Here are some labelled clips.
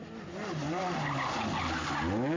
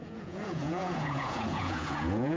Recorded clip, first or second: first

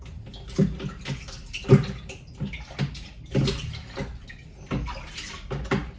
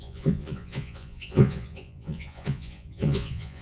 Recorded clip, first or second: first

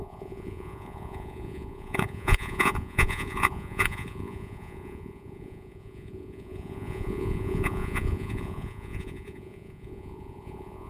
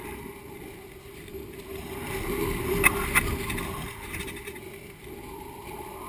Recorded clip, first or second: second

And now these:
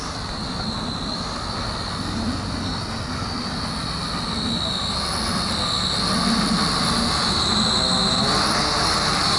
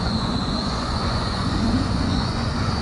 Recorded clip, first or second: first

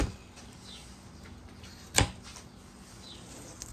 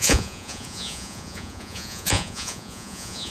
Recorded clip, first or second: first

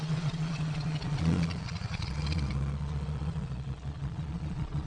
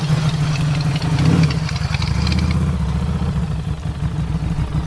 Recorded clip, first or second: second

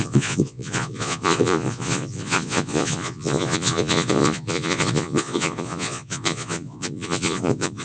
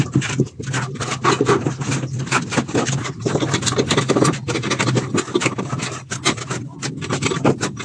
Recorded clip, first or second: second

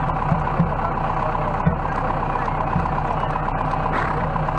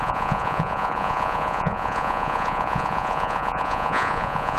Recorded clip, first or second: first